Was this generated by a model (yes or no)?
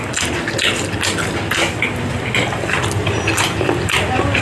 no